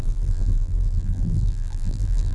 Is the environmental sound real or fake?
fake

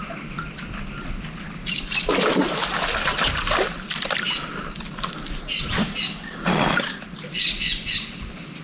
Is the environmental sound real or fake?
fake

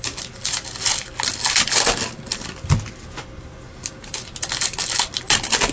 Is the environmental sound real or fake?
real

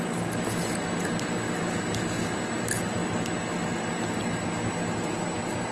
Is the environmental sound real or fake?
real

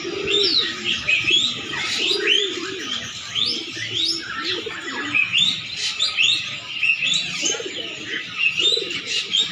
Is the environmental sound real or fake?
real